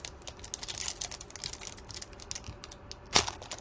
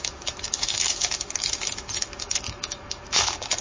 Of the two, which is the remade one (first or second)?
second